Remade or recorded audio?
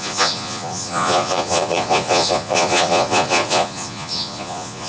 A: remade